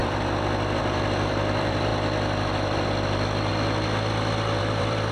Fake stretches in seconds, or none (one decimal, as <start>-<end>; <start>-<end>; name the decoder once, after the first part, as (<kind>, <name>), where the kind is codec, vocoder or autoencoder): 0.0-1.9 (vocoder, BigVGAN v2); 2.5-3.5; 4.6-5.1